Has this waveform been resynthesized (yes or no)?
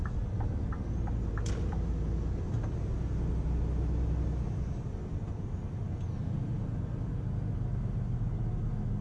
no